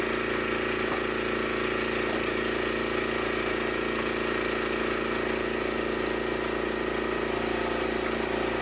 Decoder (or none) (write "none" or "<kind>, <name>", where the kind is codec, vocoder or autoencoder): none